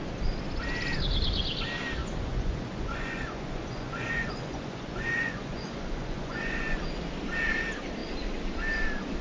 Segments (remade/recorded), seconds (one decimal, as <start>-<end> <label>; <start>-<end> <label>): 0.0-2.0 recorded; 2.0-6.8 remade; 6.8-9.2 recorded